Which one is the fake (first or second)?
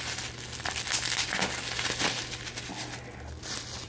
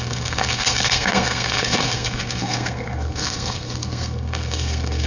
second